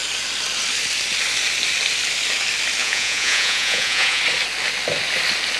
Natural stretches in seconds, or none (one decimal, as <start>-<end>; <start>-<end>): 0.0-2.8; 4.2-5.6